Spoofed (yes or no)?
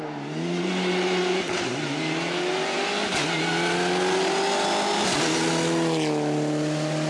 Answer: no